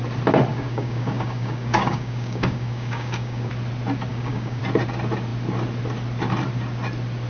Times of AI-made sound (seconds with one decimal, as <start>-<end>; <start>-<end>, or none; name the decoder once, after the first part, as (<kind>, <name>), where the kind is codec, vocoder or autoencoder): 0.5-3.5 (codec, DAC); 4.1-4.6